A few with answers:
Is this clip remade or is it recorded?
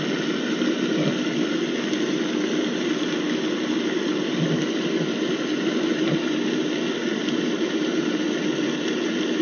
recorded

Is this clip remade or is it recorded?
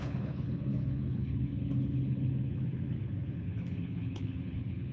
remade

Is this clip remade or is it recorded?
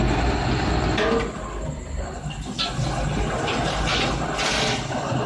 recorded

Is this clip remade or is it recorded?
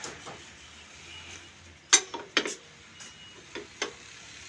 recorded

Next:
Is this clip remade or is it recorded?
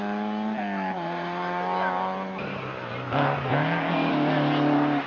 recorded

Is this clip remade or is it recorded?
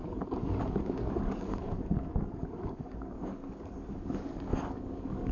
remade